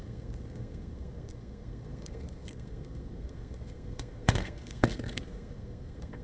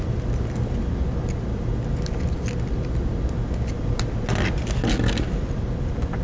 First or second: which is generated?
first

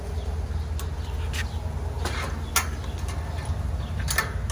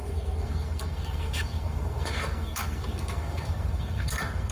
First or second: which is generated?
second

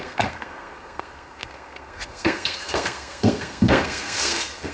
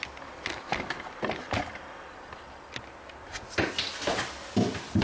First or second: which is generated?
first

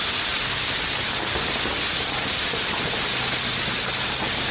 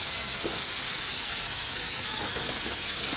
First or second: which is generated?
second